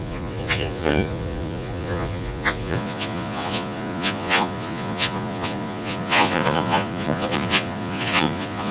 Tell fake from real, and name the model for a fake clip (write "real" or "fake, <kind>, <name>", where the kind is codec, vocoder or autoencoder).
fake, vocoder, Vocos